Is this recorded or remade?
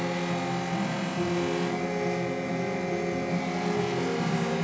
recorded